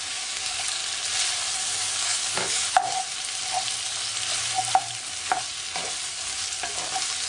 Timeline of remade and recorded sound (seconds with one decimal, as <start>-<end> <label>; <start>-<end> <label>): 0.0-0.8 remade; 0.8-1.6 recorded; 1.6-2.8 remade; 2.8-7.3 recorded

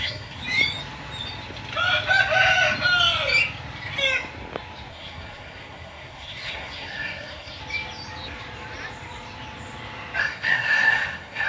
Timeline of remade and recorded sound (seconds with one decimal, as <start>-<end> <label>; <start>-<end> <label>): 0.0-0.4 remade; 0.4-4.9 recorded; 4.9-7.6 remade; 7.6-10.2 recorded; 10.2-11.5 remade

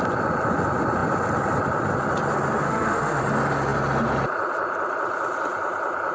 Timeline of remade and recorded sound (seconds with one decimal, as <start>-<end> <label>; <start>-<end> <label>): 0.0-2.6 recorded; 2.6-3.2 remade; 3.2-6.1 recorded

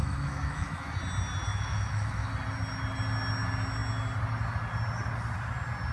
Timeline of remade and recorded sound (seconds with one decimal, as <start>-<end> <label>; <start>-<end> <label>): 0.0-0.9 remade; 0.9-1.5 recorded; 1.5-2.3 remade; 2.3-5.9 recorded

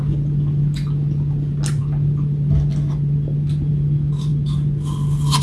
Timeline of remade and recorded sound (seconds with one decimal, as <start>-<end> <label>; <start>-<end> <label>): 0.0-5.4 recorded

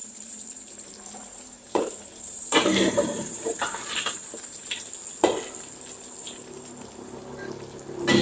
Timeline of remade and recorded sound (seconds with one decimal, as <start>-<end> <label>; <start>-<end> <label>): 0.0-4.9 remade; 4.9-8.2 recorded